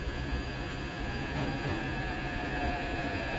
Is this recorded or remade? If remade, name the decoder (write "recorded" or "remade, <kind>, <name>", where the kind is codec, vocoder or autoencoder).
remade, vocoder, Vocos